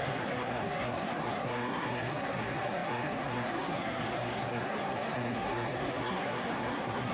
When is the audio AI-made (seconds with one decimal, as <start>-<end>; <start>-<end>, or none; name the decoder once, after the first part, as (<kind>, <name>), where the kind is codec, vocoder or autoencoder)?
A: 0.0-7.1 (codec, SNAC)